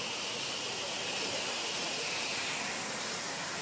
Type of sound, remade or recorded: recorded